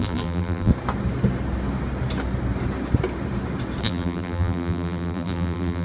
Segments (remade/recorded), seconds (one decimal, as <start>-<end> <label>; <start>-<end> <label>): 0.0-0.7 remade; 0.7-3.8 recorded; 3.8-5.8 remade